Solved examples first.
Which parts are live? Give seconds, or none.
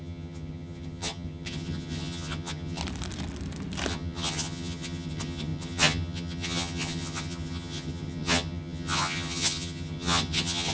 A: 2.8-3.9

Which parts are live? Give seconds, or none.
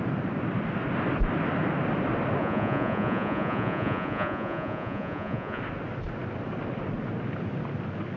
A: 0.0-2.4; 5.6-8.2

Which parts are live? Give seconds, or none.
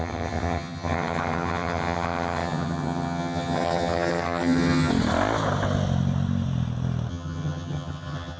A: 4.9-7.1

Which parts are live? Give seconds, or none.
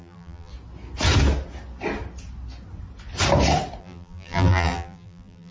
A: 0.5-3.8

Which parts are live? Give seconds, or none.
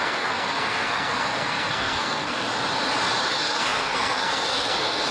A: 2.5-3.3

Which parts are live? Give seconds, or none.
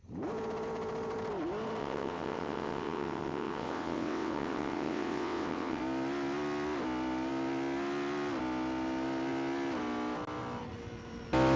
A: 0.0-1.8; 5.8-11.6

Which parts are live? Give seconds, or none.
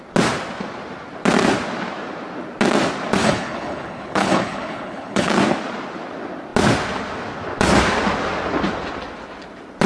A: 0.0-3.2; 5.3-9.9